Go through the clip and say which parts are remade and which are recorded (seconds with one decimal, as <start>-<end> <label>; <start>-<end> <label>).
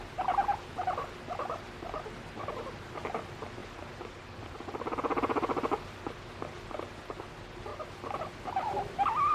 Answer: 0.0-7.7 recorded; 7.7-8.2 remade; 8.2-9.3 recorded